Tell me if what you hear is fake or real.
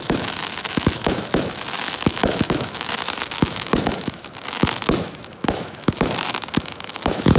fake